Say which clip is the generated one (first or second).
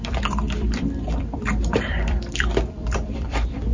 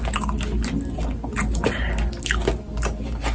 first